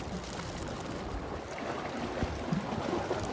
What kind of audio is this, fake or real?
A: real